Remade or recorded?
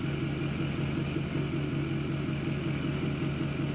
recorded